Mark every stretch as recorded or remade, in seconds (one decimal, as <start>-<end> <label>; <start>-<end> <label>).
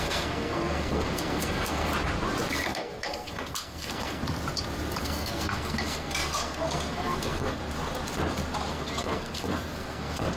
0.0-1.9 remade; 1.9-2.5 recorded; 2.5-4.2 remade; 4.2-5.0 recorded; 5.0-7.6 remade; 7.6-8.7 recorded; 8.7-10.4 remade